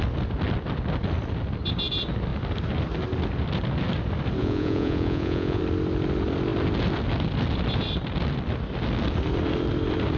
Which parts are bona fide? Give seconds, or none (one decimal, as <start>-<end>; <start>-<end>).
0.0-4.4; 5.6-10.2